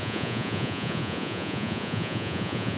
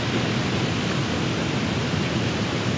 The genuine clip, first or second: second